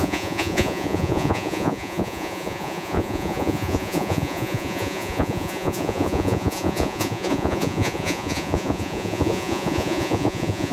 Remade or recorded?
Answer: remade